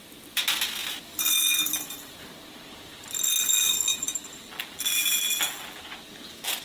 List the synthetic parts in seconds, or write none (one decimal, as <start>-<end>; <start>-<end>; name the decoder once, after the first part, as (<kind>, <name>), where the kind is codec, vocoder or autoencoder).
3.9-5.8 (vocoder, BigVGAN v2)